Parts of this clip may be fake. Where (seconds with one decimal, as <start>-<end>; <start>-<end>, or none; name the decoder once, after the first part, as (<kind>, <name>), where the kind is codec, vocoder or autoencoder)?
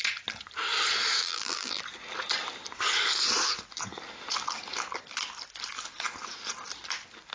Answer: 1.2-1.8 (vocoder, BigVGAN v2)